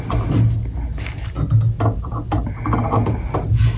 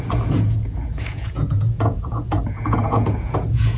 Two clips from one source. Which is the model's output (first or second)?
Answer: second